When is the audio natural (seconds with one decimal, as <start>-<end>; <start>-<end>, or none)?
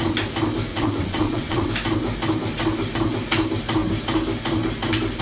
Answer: 0.0-0.7; 1.7-5.2